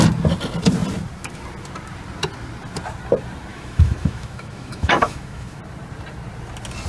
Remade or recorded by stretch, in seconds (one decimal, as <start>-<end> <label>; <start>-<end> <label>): 0.0-3.5 recorded; 3.5-5.6 remade; 5.6-6.9 recorded